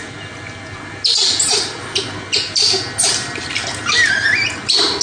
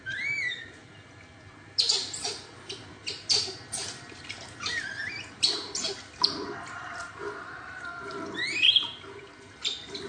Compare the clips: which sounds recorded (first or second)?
first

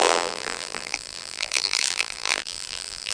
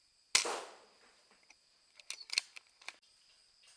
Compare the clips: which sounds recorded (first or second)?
second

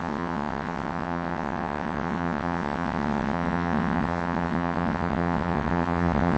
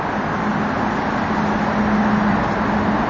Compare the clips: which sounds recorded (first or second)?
second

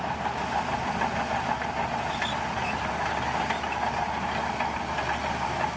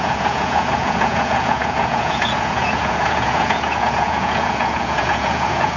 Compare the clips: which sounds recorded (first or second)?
first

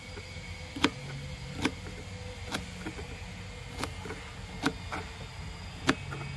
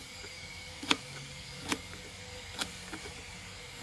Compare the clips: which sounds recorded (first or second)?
first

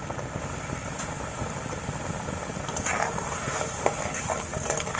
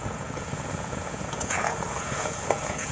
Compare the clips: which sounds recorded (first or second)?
first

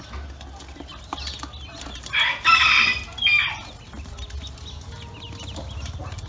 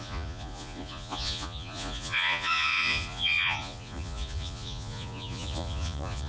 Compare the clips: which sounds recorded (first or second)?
first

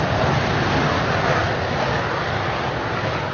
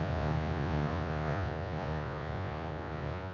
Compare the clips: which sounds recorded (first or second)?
first